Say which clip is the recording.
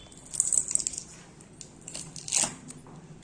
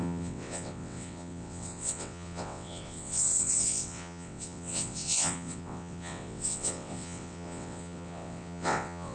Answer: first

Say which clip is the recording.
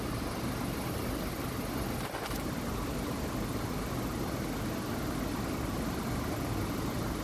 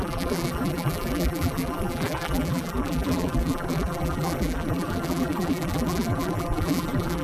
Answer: first